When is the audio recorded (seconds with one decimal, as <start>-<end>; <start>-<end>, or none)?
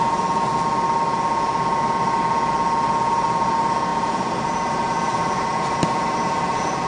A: 0.5-3.1